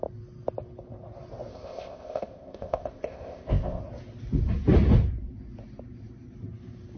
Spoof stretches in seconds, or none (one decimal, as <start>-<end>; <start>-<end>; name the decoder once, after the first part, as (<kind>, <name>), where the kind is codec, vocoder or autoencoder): 1.5-3.8 (codec, ZipCodec)